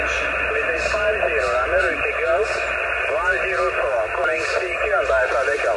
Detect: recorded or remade recorded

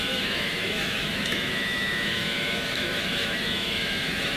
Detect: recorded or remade remade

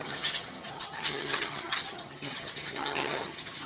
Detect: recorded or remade remade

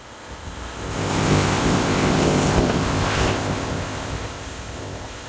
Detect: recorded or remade remade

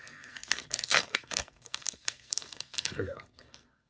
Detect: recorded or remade remade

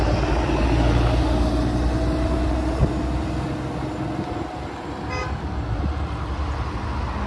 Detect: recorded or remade recorded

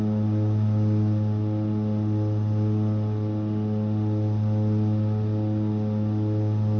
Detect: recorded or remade recorded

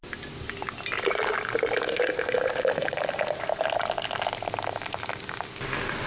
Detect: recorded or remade recorded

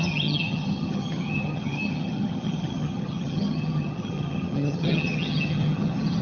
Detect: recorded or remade remade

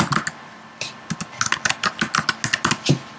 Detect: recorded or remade recorded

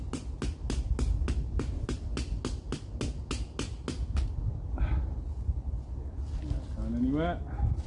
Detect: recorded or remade recorded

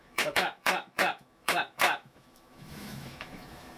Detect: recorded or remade remade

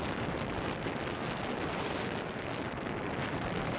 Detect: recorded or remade recorded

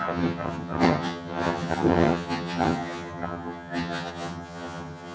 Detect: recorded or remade remade